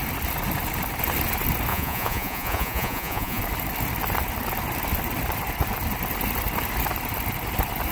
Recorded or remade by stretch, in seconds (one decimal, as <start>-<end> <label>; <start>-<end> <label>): 0.0-1.7 recorded; 1.7-3.4 remade; 3.4-7.9 recorded